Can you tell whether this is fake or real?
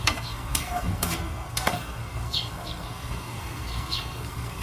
fake